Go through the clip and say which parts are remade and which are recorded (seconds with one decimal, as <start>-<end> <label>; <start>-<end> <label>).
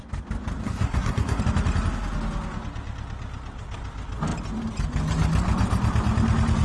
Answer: 0.0-0.6 recorded; 0.6-1.4 remade; 1.4-6.6 recorded